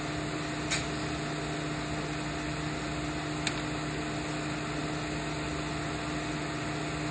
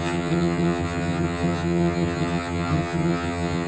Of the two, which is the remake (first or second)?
second